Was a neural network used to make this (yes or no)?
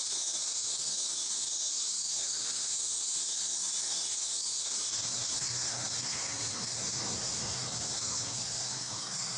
yes